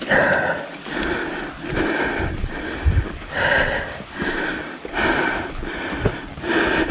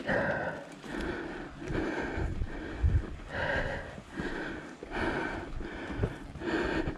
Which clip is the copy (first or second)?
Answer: first